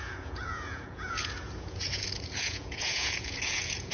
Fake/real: fake